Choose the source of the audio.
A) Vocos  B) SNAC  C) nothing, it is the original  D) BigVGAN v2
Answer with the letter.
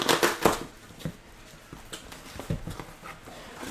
C